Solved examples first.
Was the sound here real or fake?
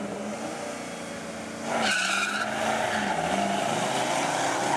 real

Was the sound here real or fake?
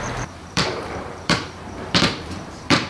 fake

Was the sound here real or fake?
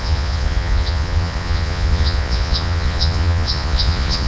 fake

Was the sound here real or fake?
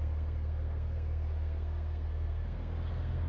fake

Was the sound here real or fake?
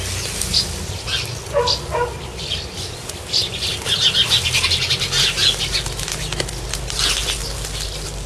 real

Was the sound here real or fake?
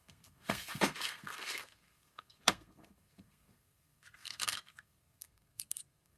fake